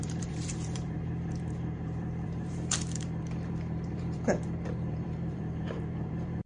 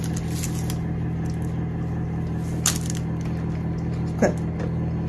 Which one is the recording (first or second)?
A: second